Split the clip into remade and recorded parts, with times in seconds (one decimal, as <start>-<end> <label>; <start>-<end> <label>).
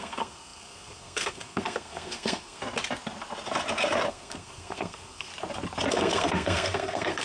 0.0-2.6 remade; 2.6-4.1 recorded; 4.1-5.3 remade; 5.3-5.9 recorded; 5.9-7.2 remade